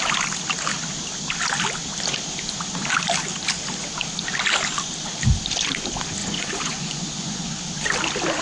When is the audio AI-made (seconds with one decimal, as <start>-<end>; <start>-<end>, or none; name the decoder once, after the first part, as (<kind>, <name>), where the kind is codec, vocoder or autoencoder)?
6.2-7.4 (vocoder, Vocos)